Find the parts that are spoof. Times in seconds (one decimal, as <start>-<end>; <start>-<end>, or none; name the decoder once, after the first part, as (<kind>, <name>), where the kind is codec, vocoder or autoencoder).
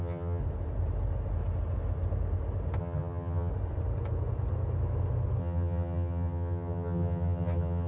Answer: 0.0-0.4 (vocoder, HiFi-GAN); 2.8-3.5; 5.4-7.9